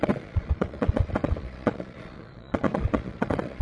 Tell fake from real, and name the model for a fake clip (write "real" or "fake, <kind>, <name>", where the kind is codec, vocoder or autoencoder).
fake, vocoder, Vocos